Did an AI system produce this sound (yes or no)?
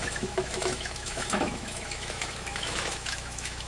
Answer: yes